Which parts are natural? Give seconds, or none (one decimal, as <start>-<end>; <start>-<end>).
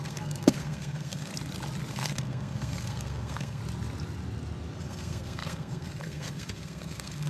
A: 1.3-1.9; 3.6-4.8